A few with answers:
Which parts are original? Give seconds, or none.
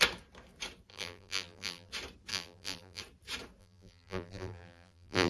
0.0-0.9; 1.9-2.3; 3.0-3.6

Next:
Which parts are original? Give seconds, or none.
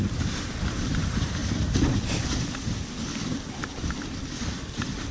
1.4-2.4; 3.3-4.2